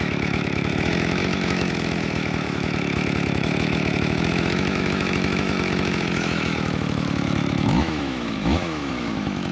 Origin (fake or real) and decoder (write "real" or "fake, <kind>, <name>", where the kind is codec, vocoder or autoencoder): fake, autoencoder, DAC-VAE